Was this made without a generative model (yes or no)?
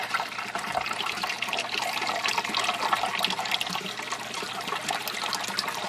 yes